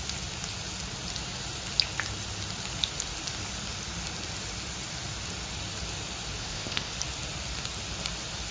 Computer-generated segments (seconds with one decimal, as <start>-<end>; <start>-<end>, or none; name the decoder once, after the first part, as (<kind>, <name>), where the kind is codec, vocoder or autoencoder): 6.4-6.9 (codec, ZipCodec)